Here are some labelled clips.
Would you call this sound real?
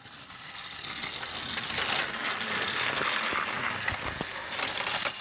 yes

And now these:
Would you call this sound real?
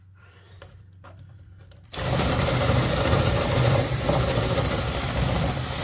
no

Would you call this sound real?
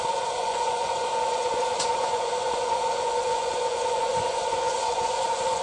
no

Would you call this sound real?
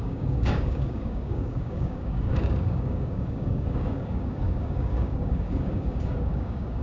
no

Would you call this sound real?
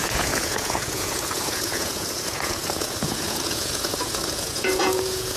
no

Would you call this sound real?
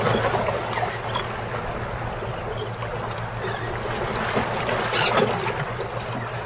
yes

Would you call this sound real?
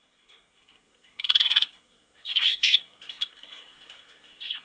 no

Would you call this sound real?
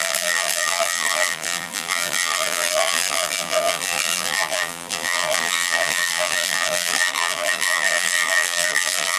no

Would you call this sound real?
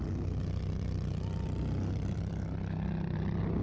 yes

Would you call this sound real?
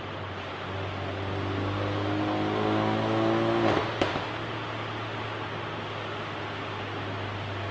yes